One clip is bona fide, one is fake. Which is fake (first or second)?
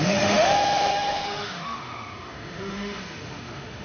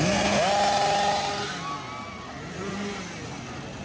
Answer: first